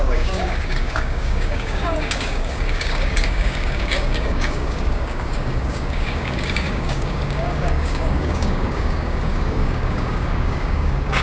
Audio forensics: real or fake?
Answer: fake